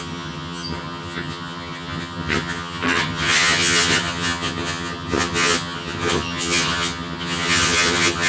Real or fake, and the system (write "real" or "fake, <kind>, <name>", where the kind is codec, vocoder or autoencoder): fake, vocoder, HiFi-GAN